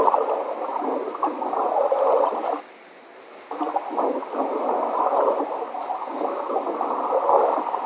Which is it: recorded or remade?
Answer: recorded